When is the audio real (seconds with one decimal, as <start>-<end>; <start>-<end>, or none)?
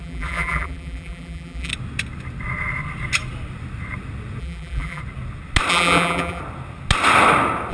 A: 1.7-4.4; 5.0-5.7; 6.4-7.7